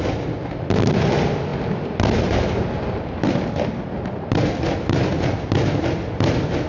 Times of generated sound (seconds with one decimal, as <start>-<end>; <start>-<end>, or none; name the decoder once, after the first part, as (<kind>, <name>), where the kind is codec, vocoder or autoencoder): none